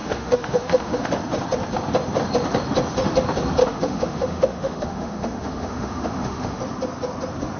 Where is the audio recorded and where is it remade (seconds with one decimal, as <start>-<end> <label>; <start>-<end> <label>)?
0.0-1.1 remade; 1.1-3.6 recorded; 3.6-6.6 remade; 6.6-7.6 recorded